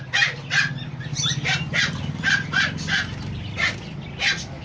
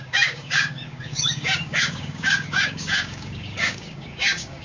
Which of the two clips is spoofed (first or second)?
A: second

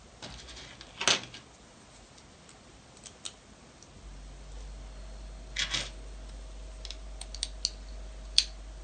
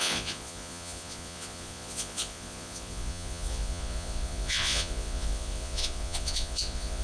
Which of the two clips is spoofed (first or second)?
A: second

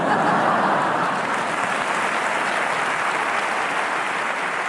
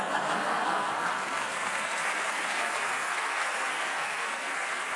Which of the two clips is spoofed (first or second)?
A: second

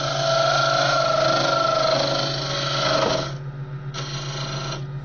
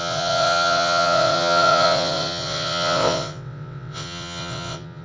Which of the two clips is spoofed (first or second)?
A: second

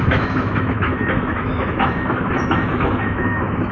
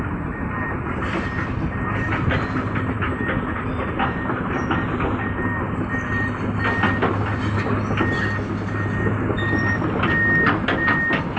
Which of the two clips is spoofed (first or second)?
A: first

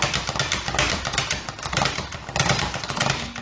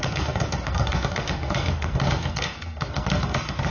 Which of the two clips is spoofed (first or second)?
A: second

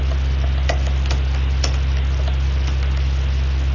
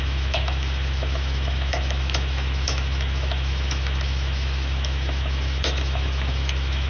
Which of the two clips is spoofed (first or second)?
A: second